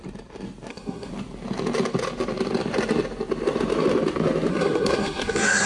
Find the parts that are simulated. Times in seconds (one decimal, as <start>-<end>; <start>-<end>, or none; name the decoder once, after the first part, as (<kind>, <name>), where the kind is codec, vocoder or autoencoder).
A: 0.7-1.1 (codec, SNAC); 4.5-5.7